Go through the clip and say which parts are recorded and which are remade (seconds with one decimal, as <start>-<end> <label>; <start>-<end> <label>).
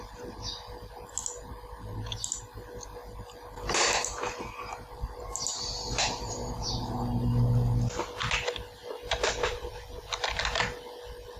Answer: 0.0-11.4 recorded